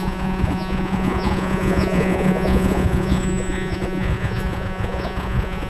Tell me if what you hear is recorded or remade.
remade